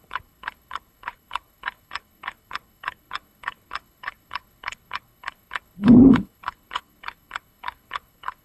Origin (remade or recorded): remade